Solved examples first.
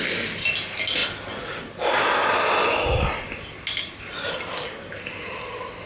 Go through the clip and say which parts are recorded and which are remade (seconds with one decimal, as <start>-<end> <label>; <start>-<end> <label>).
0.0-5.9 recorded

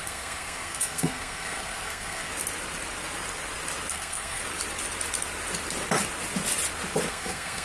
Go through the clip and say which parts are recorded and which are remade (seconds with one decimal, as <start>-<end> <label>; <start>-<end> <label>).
0.0-2.3 remade; 2.3-3.9 recorded; 3.9-4.4 remade; 4.4-7.1 recorded; 7.1-7.6 remade

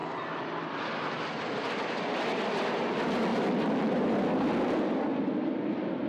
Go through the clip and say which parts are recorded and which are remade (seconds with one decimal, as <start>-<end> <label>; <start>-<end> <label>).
0.0-3.3 recorded; 3.3-4.5 remade; 4.5-6.1 recorded

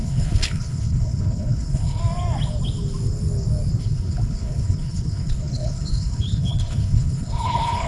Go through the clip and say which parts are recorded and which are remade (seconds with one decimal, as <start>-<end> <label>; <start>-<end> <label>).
0.0-2.0 remade; 2.0-3.8 recorded; 3.8-7.9 remade

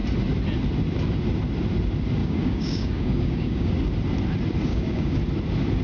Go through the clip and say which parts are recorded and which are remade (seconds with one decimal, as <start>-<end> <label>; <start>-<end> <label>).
0.0-2.2 recorded; 2.2-3.7 remade; 3.7-4.7 recorded; 4.7-5.2 remade; 5.2-5.8 recorded